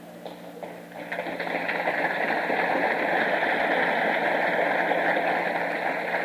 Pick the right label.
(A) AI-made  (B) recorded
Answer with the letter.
B